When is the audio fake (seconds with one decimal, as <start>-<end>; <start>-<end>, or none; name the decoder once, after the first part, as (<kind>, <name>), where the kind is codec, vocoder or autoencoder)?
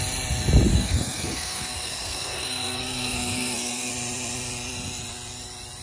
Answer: 0.7-3.9 (codec, SNAC)